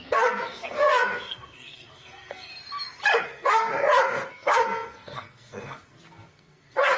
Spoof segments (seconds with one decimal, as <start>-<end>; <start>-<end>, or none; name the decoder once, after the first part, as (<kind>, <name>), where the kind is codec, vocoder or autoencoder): 0.0-2.5 (codec, SNAC); 3.2-3.7; 4.3-7.0